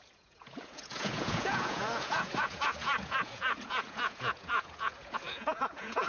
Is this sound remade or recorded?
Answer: remade